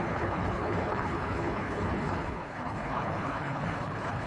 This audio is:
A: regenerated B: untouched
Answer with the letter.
A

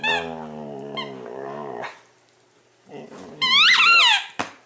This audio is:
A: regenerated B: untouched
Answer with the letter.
B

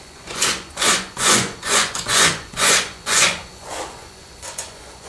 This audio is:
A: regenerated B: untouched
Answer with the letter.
A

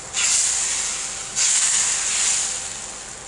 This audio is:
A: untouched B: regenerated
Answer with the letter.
A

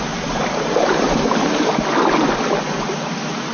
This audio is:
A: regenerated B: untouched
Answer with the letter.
B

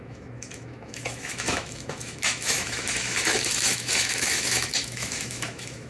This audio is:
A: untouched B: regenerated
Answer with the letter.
B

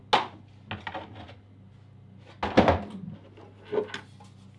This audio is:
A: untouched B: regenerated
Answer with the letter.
A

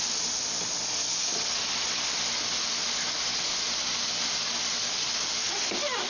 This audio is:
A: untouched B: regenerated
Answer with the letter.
A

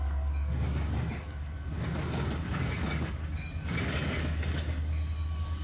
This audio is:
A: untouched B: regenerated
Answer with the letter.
B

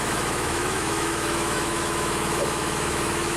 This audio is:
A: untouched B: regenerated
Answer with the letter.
B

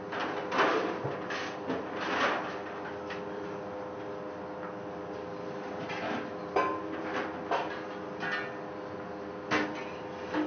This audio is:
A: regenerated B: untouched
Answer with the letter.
B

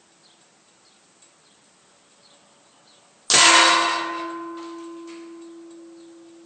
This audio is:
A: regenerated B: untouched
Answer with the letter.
B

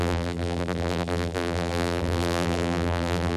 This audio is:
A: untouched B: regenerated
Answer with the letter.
B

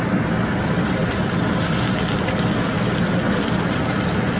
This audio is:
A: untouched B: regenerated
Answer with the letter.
A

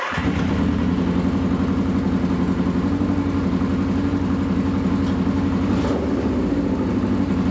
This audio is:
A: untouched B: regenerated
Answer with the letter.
A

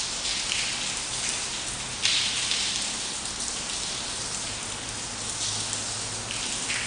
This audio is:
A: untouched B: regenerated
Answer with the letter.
A